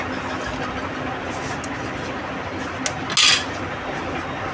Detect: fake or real real